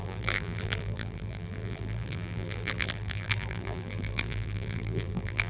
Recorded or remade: remade